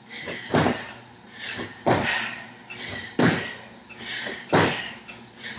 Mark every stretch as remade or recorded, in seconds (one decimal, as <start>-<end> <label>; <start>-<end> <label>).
0.0-1.8 remade; 1.8-2.8 recorded; 2.8-3.2 remade; 3.2-5.6 recorded